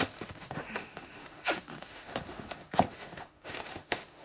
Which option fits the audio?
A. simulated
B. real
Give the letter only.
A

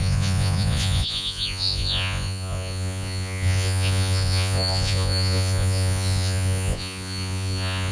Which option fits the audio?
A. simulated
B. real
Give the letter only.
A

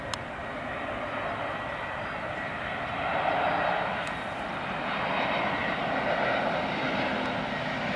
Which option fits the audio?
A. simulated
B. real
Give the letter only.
B